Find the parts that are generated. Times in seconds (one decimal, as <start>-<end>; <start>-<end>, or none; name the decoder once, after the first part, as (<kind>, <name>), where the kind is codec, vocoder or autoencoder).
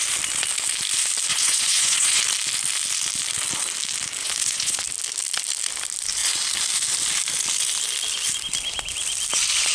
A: 1.3-2.2 (vocoder, Vocos); 4.2-4.8